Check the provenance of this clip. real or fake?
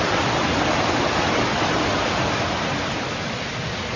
real